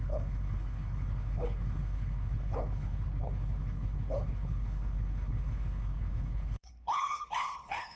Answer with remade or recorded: remade